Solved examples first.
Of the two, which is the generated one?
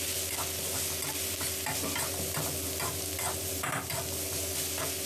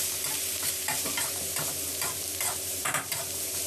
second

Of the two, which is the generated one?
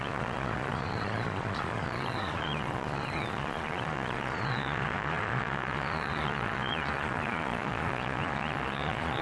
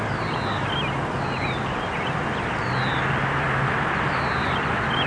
first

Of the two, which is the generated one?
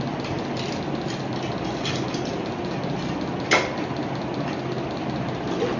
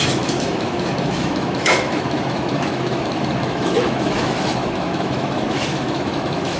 second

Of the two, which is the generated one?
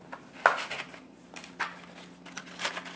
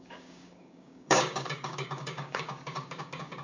second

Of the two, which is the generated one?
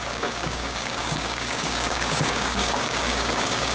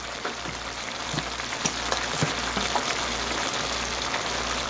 first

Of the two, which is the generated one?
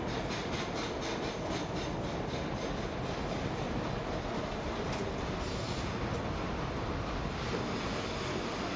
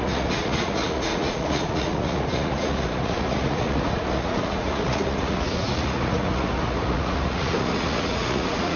second